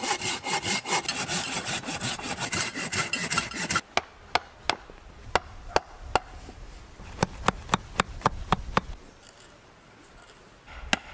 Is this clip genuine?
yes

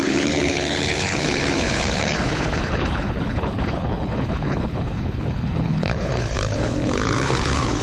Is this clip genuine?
no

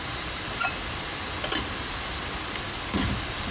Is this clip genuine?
yes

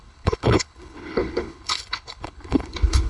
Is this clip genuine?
no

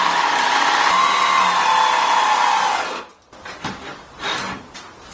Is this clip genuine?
yes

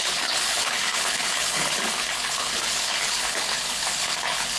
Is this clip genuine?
no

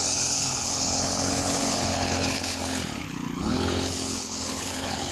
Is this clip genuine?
no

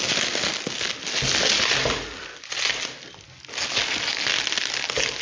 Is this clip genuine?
yes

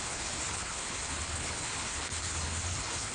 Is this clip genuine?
no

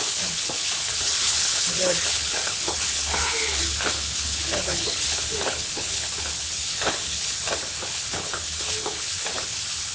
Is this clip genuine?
no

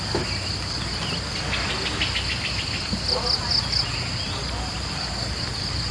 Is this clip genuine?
yes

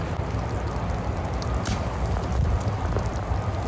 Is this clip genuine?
yes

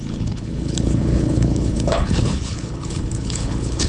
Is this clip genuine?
no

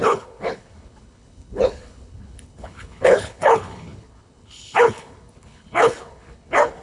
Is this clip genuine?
no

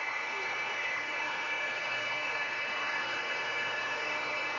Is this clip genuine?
no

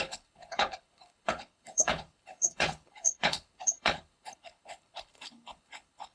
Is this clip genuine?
no